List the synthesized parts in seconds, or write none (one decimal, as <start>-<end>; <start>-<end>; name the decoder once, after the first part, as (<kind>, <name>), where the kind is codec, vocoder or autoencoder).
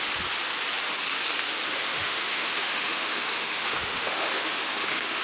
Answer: 1.9-5.2 (autoencoder, DAC-VAE)